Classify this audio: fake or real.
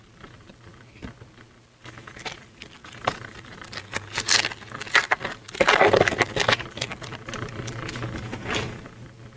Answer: real